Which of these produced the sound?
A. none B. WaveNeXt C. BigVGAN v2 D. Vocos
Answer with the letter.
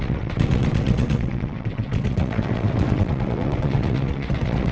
B